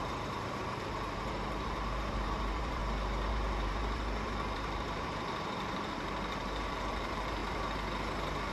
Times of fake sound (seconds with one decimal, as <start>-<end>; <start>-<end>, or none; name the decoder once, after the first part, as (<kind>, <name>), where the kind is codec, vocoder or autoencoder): 0.0-2.8 (vocoder, BigVGAN v2); 3.3-7.4

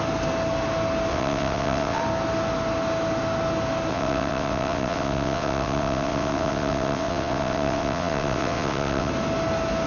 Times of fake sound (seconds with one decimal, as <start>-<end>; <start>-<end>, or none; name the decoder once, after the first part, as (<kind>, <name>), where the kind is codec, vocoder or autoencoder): 1.1-2.0 (vocoder, WaveNeXt); 3.9-9.1

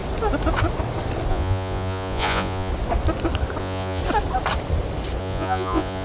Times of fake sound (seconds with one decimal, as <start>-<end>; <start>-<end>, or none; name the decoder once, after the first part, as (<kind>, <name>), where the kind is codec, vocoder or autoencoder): 1.3-2.7 (vocoder, Vocos); 3.6-4.0; 5.2-6.0

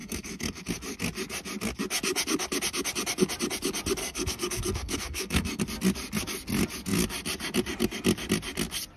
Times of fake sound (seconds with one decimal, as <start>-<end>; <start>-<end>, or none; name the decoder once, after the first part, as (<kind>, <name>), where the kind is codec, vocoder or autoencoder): 0.0-0.6 (codec, SNAC); 4.0-5.6

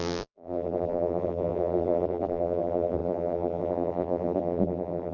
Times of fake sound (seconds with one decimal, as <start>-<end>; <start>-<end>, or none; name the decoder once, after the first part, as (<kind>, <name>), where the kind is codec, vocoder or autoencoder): 0.0-5.1 (vocoder, BigVGAN v2)